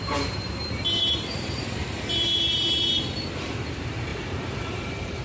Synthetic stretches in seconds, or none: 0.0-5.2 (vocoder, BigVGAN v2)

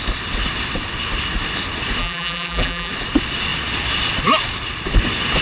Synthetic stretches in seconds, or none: 2.0-2.9 (vocoder, BigVGAN v2)

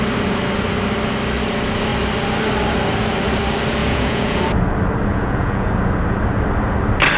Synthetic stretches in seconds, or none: 3.8-4.4 (vocoder, Vocos); 5.1-5.7